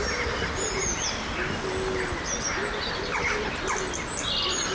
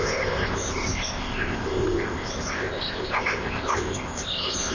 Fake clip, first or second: second